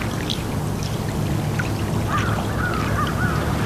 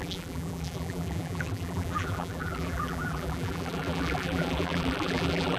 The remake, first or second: second